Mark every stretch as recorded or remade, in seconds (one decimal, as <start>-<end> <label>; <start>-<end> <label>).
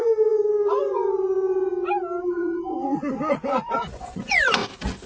0.0-1.7 remade; 1.7-2.2 recorded; 2.2-4.6 remade; 4.6-5.1 recorded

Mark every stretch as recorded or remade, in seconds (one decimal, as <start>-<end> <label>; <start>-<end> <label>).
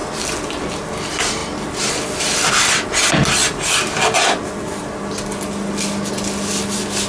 0.0-7.1 recorded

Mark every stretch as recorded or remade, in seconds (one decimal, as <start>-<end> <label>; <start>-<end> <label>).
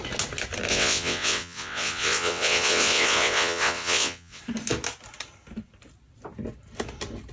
0.0-0.7 recorded; 0.7-4.4 remade; 4.4-7.3 recorded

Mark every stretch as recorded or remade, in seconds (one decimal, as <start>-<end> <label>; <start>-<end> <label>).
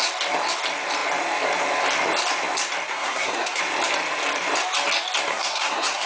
0.0-2.9 recorded; 2.9-3.6 remade; 3.6-5.3 recorded; 5.3-6.1 remade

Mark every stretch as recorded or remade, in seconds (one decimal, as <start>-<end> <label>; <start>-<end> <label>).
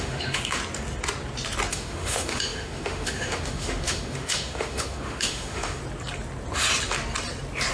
0.0-0.6 remade; 0.6-1.7 recorded; 1.7-5.8 remade; 5.8-7.7 recorded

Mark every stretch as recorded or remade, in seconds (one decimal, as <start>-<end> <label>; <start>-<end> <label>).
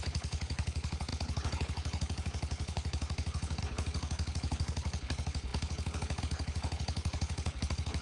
0.0-8.0 remade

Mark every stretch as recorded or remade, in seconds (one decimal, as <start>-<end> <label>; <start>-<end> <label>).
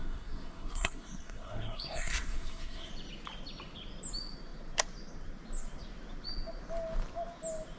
0.0-2.9 remade; 2.9-7.8 recorded